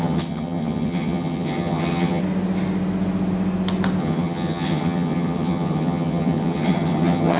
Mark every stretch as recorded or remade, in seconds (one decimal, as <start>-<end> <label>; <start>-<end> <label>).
0.0-2.2 remade; 2.2-4.0 recorded; 4.0-7.4 remade